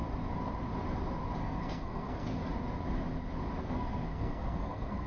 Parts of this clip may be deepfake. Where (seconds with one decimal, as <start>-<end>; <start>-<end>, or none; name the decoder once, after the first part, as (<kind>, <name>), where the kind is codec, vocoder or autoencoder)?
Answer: 1.4-2.4 (codec, SNAC); 3.6-5.1